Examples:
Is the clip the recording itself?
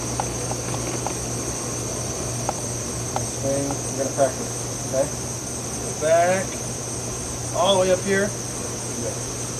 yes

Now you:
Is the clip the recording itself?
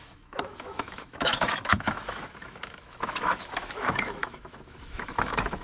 no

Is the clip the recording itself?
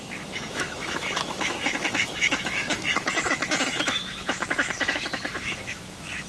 no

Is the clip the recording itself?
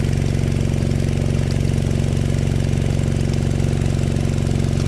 yes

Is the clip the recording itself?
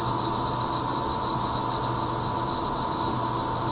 yes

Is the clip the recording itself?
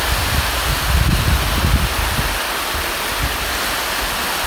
yes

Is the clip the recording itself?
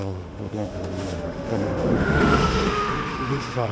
no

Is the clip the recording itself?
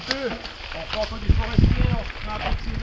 yes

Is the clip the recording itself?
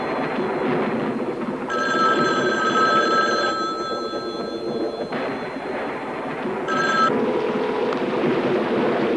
yes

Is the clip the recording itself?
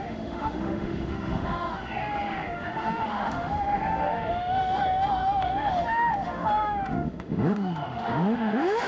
no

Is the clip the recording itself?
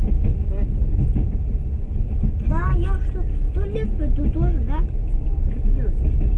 yes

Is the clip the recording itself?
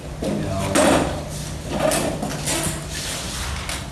yes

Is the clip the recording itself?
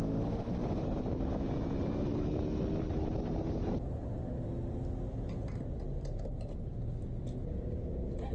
yes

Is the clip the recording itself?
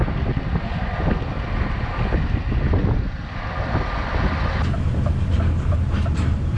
yes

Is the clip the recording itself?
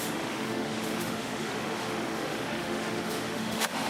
no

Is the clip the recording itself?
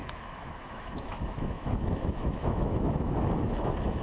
no